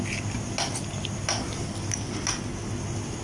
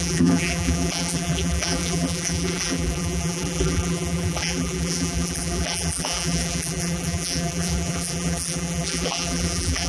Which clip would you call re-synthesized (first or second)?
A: second